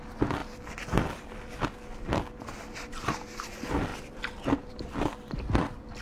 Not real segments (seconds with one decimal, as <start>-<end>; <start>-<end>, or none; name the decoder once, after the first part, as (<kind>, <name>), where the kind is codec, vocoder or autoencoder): 0.4-1.6 (vocoder, BigVGAN v2); 3.9-6.0